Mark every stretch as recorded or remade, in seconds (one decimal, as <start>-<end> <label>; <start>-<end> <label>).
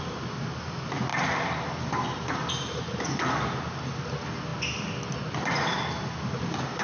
0.0-6.8 recorded